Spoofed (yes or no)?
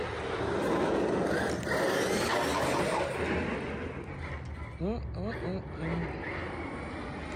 no